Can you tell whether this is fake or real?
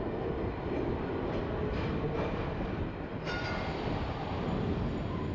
real